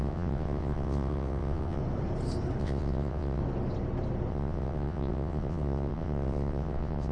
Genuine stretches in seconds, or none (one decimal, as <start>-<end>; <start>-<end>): 1.8-2.6; 3.4-4.3